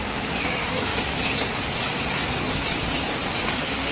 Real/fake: fake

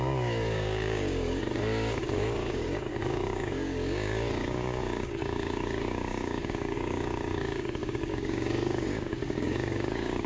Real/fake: fake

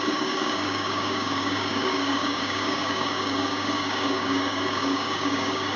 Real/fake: fake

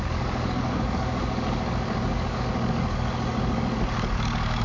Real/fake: fake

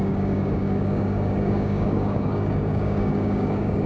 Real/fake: fake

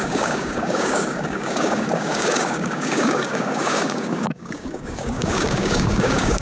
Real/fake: fake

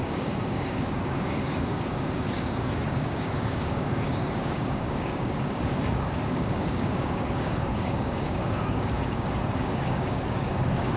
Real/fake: fake